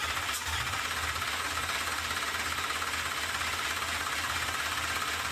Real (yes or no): yes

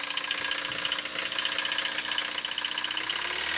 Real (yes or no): yes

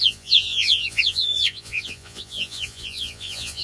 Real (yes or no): no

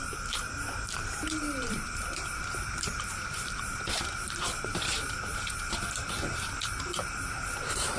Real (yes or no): no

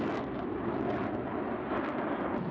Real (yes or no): yes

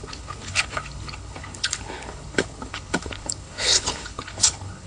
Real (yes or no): no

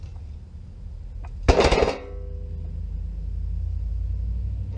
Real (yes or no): yes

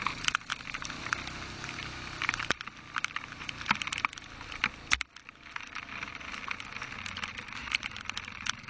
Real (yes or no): yes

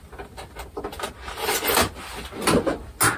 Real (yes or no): yes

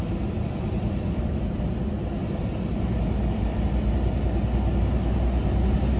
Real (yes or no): yes